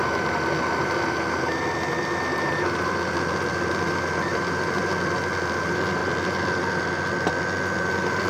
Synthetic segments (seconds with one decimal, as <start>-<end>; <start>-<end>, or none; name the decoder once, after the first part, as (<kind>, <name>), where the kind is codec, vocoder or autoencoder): 0.0-6.0 (vocoder, BigVGAN v2); 7.9-8.3